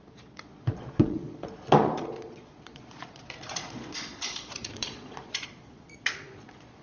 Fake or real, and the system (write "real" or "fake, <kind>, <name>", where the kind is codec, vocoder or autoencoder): fake, vocoder, Vocos